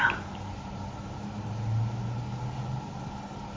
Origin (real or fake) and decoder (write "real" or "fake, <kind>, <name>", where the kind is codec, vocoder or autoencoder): real